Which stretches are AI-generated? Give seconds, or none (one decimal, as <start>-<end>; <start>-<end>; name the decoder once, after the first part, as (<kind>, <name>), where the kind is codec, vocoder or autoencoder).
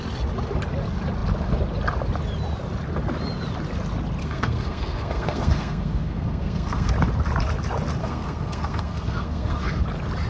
4.2-6.9 (codec, SNAC); 8.0-9.8